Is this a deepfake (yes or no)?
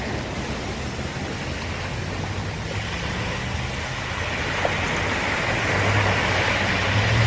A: no